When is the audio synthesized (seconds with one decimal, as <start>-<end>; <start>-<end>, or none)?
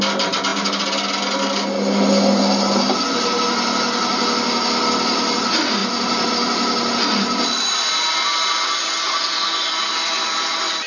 none